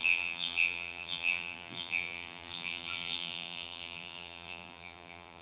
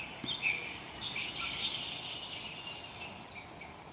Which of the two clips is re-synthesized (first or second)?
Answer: first